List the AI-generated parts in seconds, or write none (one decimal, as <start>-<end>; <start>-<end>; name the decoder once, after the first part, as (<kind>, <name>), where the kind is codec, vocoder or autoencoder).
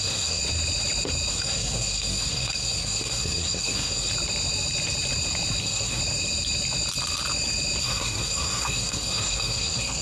0.0-0.4 (codec, SNAC); 1.3-4.1; 5.6-6.0; 7.8-10.0